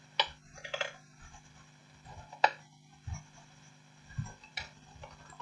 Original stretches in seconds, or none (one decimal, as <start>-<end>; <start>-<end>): 0.0-5.4